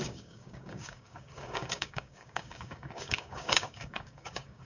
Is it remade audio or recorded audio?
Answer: remade